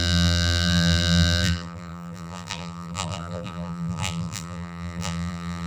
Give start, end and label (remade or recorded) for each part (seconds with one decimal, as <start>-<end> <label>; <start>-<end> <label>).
0.0-5.7 remade